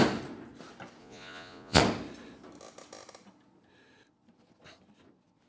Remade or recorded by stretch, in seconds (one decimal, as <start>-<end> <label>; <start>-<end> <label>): 0.0-1.0 recorded; 1.0-1.8 remade; 1.8-5.5 recorded